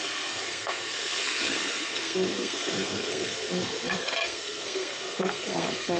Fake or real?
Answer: fake